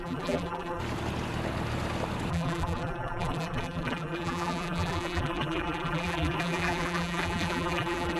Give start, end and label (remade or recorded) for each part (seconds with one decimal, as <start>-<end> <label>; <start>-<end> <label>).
0.0-0.8 remade; 0.8-2.3 recorded; 2.3-8.2 remade